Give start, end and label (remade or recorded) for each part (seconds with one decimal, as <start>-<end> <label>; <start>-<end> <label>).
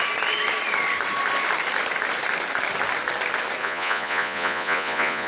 0.0-3.6 recorded; 3.6-5.3 remade